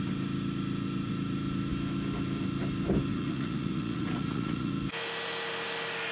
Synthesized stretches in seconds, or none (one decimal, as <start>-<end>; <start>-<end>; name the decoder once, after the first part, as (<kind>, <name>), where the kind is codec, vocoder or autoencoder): 3.1-4.7 (vocoder, Vocos)

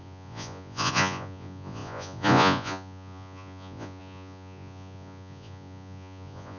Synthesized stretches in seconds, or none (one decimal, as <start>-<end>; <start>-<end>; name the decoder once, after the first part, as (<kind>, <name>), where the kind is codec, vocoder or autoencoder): 0.0-6.6 (vocoder, Vocos)

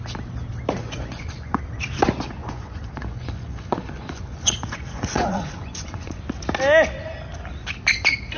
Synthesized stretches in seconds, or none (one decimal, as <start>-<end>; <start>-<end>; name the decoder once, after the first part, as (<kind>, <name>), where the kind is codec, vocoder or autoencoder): 0.8-1.6 (vocoder, Vocos); 2.4-6.2